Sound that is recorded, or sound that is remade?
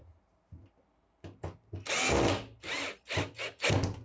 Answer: recorded